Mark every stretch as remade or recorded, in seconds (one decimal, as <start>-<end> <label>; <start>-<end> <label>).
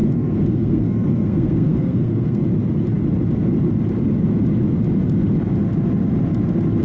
0.0-2.4 remade; 2.4-6.8 recorded